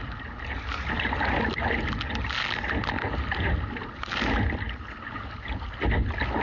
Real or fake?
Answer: real